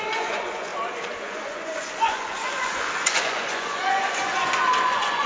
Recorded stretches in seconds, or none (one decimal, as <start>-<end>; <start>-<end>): 0.7-1.2